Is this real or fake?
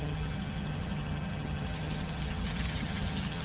fake